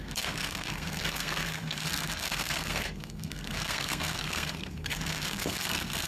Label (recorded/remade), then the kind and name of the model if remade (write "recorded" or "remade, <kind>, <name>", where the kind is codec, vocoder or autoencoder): remade, codec, SNAC